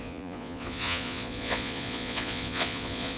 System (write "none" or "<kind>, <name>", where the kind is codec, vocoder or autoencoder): vocoder, Vocos